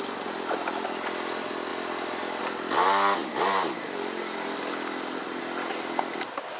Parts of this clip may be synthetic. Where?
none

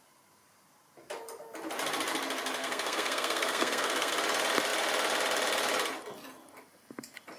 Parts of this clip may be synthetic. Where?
2.6-4.1 (codec, SNAC)

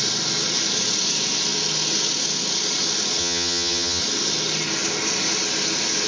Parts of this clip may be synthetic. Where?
3.2-4.0 (vocoder, HiFi-GAN)